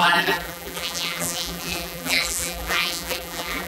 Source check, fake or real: fake